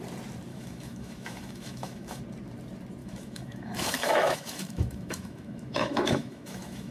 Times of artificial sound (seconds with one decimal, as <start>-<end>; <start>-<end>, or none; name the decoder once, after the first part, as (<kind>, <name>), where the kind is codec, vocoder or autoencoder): 0.5-2.2 (autoencoder, DAC-VAE); 3.0-6.9